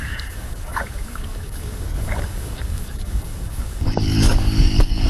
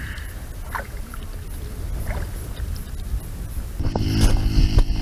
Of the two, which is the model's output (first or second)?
first